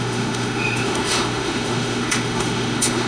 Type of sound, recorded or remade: remade